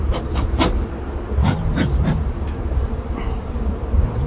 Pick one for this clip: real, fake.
fake